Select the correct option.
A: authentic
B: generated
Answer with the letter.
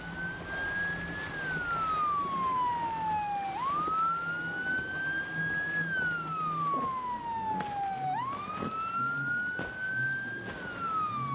A